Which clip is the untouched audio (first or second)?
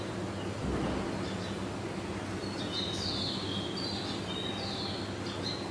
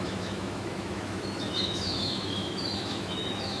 first